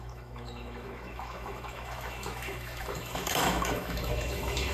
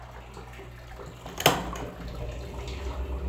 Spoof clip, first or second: first